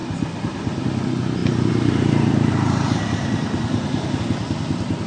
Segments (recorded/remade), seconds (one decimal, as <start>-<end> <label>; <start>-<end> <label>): 0.0-1.4 recorded; 1.4-4.2 remade; 4.2-5.1 recorded

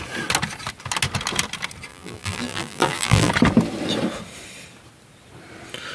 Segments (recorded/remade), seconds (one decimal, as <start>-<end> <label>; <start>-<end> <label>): 0.0-1.9 recorded; 1.9-3.3 remade; 3.3-5.9 recorded